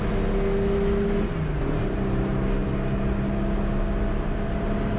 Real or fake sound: real